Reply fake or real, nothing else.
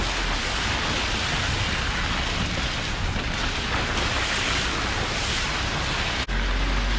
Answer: real